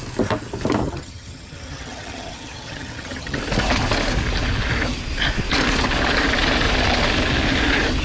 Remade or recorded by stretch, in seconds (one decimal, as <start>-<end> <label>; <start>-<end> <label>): 0.0-0.8 recorded; 0.8-3.4 remade; 3.4-8.0 recorded